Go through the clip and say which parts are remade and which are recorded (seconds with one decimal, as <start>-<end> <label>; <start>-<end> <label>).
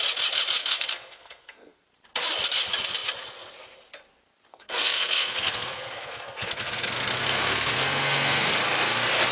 0.0-0.6 recorded; 0.6-1.8 remade; 1.8-4.5 recorded; 4.5-8.5 remade; 8.5-9.3 recorded